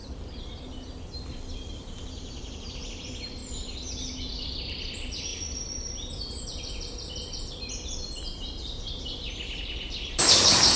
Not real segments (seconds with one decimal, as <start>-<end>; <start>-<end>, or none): 0.0-3.4; 4.6-10.8